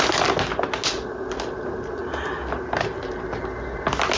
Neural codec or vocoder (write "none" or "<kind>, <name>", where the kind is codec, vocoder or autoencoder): none